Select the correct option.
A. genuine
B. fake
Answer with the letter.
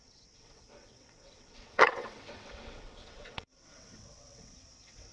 B